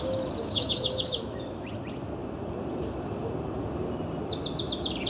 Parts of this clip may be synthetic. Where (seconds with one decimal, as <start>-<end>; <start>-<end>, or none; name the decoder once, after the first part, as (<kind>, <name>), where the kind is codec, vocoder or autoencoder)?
0.4-1.7 (autoencoder, DAC-VAE)